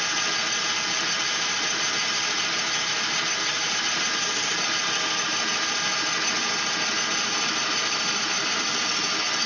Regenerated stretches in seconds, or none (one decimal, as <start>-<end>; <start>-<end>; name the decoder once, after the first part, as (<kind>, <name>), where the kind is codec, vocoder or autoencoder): 3.5-4.0 (vocoder, BigVGAN v2); 7.1-8.7